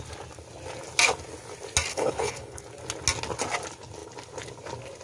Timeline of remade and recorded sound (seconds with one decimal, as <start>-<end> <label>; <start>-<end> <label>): 0.0-1.9 recorded; 1.9-2.6 remade; 2.6-5.0 recorded